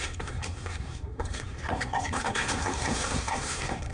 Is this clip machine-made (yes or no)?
yes